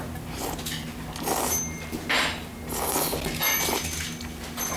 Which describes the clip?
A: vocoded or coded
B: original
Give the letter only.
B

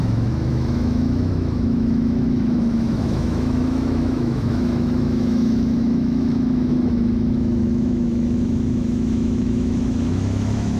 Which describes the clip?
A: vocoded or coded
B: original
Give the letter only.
A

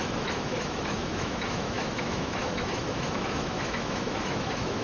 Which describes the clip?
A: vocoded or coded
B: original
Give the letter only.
A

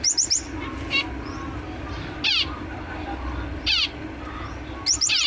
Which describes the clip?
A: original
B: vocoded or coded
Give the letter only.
A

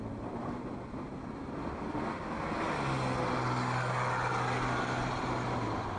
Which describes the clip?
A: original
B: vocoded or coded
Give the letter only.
A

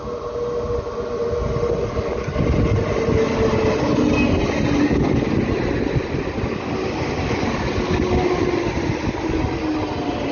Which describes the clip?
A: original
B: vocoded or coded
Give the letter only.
A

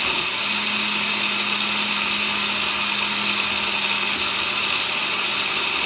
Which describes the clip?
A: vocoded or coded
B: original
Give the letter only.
B